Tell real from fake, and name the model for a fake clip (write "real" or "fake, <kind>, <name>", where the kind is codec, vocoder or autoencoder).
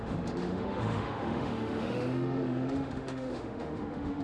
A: fake, autoencoder, DAC-VAE